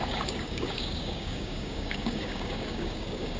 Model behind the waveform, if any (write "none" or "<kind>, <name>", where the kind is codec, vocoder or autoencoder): codec, DAC